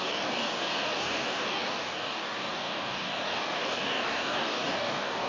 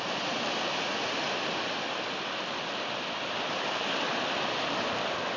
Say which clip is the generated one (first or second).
first